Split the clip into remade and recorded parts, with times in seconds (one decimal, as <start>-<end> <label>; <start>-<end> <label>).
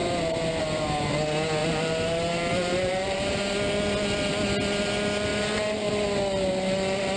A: 0.0-1.6 recorded; 1.6-3.4 remade; 3.4-5.3 recorded; 5.3-5.9 remade; 5.9-7.2 recorded